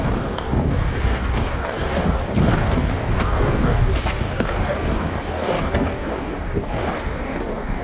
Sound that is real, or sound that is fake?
fake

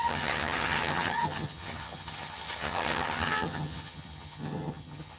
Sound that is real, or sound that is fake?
fake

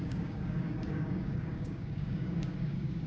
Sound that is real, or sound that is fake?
fake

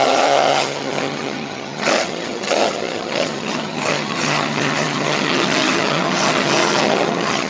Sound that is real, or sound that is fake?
fake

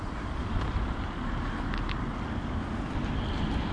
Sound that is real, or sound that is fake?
real